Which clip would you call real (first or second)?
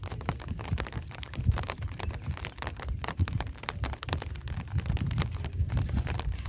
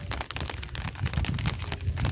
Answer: second